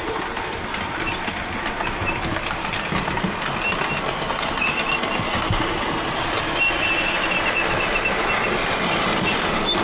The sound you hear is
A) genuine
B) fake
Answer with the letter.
A